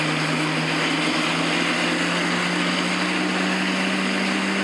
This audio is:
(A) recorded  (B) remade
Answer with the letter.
A